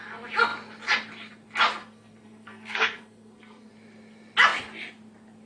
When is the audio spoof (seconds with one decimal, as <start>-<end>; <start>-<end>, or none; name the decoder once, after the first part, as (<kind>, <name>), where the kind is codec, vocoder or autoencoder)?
1.8-3.7 (codec, SNAC)